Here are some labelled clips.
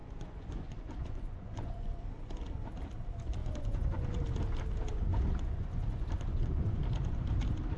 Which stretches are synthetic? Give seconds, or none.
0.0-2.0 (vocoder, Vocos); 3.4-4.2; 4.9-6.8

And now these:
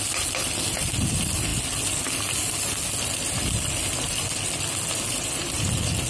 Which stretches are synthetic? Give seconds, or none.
none

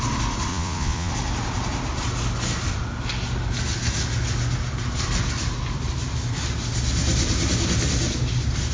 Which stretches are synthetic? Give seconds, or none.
0.5-1.1 (vocoder, Vocos)

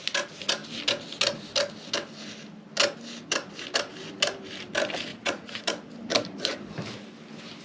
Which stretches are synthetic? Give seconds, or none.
5.1-5.6 (vocoder, Vocos)

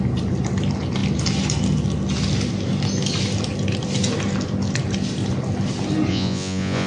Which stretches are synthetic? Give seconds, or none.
6.1-6.9 (vocoder, Vocos)

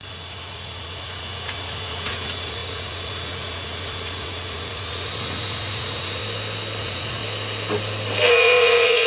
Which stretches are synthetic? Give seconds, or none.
0.0-6.2 (vocoder, Vocos); 6.8-7.2; 8.3-9.1

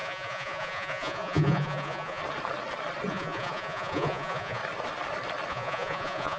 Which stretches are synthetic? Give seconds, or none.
0.0-2.2 (vocoder, Vocos); 3.1-4.6; 5.5-6.4

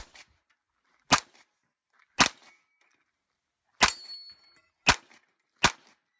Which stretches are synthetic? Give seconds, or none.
none